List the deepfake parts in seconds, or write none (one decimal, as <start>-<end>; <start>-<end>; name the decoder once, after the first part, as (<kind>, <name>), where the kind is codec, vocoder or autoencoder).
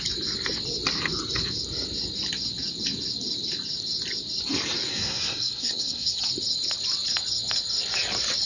4.9-6.2 (codec, SNAC)